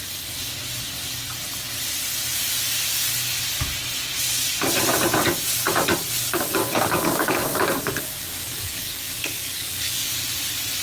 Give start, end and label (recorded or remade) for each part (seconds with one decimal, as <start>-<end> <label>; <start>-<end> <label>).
0.0-6.6 recorded; 6.6-10.1 remade; 10.1-10.8 recorded